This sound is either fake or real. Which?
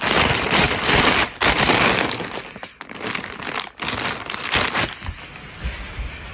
real